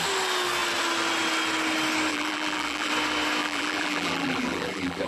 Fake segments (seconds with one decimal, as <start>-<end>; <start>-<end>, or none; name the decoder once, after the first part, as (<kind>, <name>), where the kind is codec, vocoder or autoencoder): 2.1-2.9 (vocoder, BigVGAN v2); 3.4-5.1